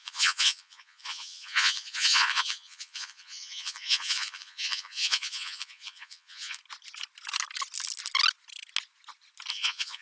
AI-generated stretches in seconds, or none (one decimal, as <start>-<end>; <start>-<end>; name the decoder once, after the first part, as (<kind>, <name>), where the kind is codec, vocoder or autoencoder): 0.0-6.6 (vocoder, Vocos); 9.5-10.0